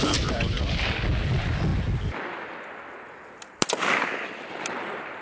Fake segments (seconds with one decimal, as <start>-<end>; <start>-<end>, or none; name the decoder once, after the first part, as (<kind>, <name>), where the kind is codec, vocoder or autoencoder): none